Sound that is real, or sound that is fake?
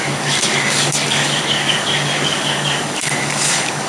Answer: fake